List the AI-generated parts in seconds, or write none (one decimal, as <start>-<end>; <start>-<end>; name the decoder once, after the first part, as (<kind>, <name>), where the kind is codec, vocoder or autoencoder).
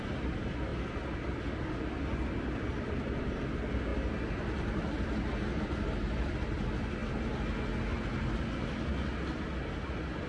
none